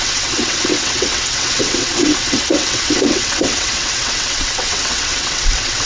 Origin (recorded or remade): remade